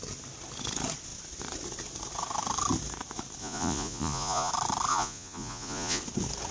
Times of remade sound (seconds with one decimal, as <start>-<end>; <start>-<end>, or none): 3.4-4.5; 4.9-6.0